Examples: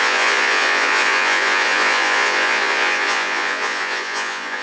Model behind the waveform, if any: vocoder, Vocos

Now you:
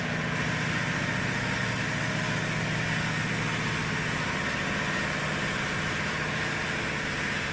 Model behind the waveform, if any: none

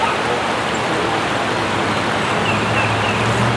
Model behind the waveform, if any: none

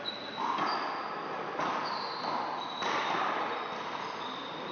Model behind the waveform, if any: none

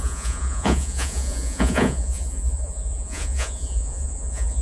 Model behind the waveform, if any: vocoder, Vocos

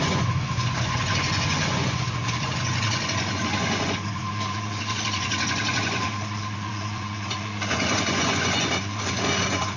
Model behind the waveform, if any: vocoder, Vocos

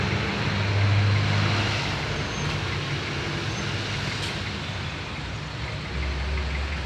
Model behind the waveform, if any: none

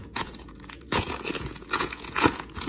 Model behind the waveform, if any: vocoder, Vocos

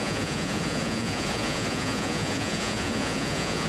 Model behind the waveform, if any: vocoder, Vocos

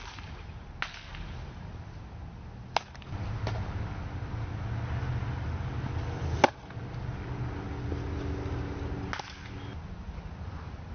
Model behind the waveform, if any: none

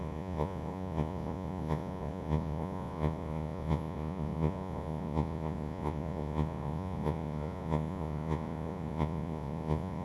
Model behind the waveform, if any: vocoder, Vocos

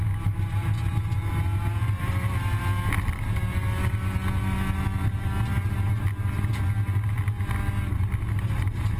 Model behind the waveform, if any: none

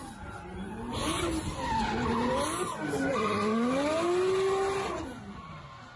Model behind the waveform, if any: none